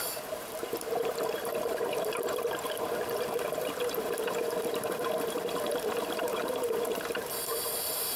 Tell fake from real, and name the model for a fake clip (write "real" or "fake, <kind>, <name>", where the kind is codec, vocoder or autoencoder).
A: fake, vocoder, BigVGAN v2